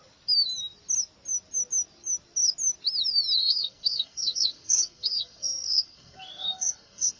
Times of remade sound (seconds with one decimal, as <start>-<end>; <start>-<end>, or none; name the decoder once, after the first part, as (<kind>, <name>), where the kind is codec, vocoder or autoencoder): 3.4-7.2 (codec, SNAC)